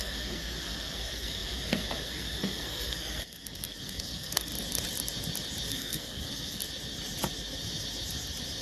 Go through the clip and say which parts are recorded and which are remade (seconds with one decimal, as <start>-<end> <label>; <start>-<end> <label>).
0.0-4.5 remade; 4.5-5.7 recorded; 5.7-6.6 remade; 6.6-8.6 recorded